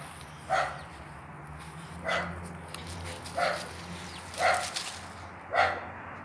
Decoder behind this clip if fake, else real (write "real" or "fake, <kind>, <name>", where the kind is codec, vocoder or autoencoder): real